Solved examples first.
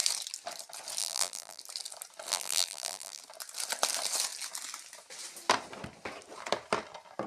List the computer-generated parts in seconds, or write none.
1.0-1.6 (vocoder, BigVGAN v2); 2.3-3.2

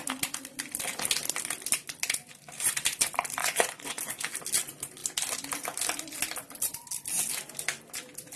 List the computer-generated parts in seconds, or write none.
3.4-4.0 (vocoder, Vocos)

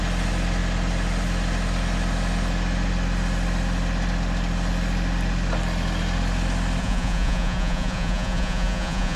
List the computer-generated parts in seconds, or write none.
6.8-9.2 (vocoder, Vocos)

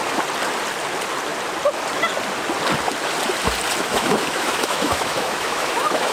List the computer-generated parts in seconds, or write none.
3.9-6.1 (autoencoder, DAC-VAE)

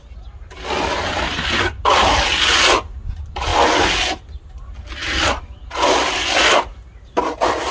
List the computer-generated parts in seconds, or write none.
none

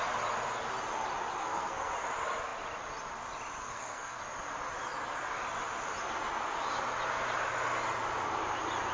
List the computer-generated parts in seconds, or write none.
1.4-1.9 (codec, SNAC); 3.6-4.2

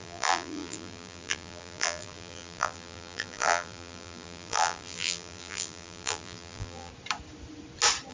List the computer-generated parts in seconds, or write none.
0.0-6.9 (vocoder, BigVGAN v2)